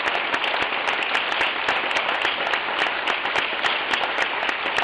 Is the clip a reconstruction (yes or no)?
no